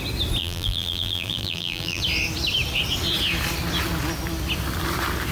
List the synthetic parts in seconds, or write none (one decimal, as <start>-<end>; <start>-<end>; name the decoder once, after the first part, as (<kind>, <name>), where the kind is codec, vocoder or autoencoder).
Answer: 0.4-2.0 (vocoder, BigVGAN v2)